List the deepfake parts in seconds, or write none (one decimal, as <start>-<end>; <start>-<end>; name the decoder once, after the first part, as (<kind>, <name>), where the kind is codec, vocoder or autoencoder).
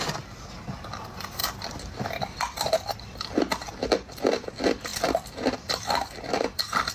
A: 1.4-3.4 (vocoder, BigVGAN v2); 4.9-6.9